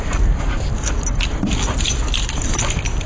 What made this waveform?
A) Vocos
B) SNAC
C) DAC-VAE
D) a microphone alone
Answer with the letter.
D